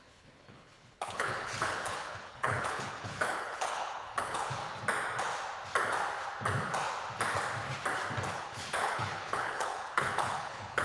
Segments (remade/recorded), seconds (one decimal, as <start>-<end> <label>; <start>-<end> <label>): 0.0-4.6 remade; 4.6-8.3 recorded; 8.3-10.8 remade